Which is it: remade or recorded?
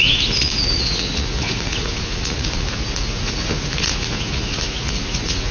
remade